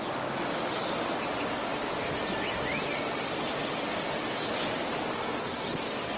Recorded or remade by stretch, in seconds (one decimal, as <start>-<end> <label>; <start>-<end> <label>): 0.0-6.2 recorded

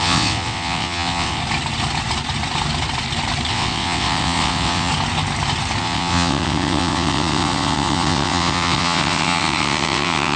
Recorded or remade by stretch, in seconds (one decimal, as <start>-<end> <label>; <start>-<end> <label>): 0.0-1.4 remade; 1.4-3.5 recorded; 3.5-4.9 remade; 4.9-5.8 recorded; 5.8-10.4 remade

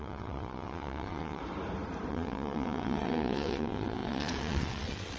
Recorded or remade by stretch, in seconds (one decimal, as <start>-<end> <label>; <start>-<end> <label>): 0.0-1.4 remade; 1.4-2.1 recorded; 2.1-5.2 remade

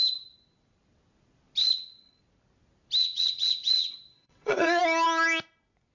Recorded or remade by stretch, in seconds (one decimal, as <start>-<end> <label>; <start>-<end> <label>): 0.0-1.6 recorded; 1.6-2.2 remade; 2.2-3.0 recorded; 3.0-4.8 remade; 4.8-5.9 recorded

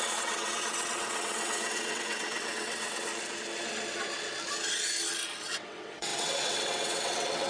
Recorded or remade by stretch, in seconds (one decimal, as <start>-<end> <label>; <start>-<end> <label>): 0.0-3.1 remade; 3.1-5.4 recorded; 5.4-7.5 remade

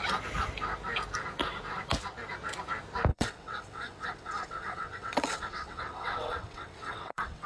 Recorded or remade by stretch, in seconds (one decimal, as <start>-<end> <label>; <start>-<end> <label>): 0.0-3.1 recorded; 3.1-7.5 remade

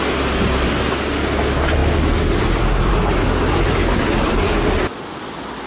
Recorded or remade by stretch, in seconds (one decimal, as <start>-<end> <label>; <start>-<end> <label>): 0.0-5.7 recorded

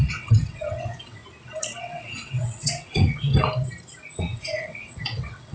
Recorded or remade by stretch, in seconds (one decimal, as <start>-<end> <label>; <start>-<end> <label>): 0.0-1.2 remade; 1.2-1.8 recorded; 1.8-3.3 remade; 3.3-4.2 recorded; 4.2-5.5 remade